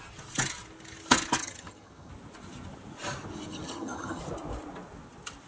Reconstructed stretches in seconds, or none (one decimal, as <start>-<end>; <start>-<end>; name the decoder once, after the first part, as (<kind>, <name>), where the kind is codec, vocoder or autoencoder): 1.4-2.1 (vocoder, HiFi-GAN); 3.5-4.2